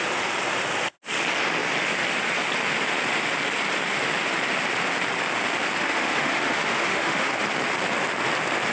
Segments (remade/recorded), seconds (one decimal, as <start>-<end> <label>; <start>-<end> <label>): 0.0-5.8 recorded; 5.8-7.3 remade; 7.3-8.7 recorded